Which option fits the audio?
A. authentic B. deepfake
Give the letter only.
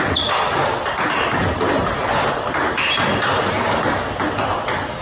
A